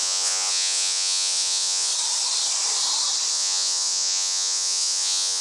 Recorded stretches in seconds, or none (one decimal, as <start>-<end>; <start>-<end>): 1.9-3.3